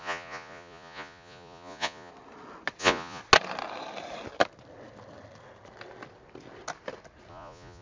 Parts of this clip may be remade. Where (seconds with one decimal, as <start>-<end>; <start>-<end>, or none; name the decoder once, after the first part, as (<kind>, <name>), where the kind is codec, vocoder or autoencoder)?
0.0-2.1 (vocoder, Vocos); 2.8-3.2; 7.3-7.8